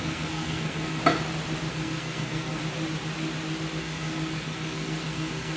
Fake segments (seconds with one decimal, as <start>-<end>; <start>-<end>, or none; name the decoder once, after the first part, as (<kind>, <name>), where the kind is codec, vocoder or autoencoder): 0.0-1.0 (codec, SNAC); 1.7-2.6; 3.8-5.6